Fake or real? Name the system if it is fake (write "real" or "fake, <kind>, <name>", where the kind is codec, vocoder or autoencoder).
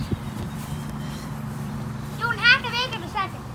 fake, vocoder, BigVGAN v2